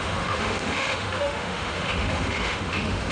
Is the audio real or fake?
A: fake